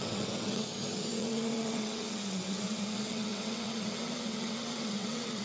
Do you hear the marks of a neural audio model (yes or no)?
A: yes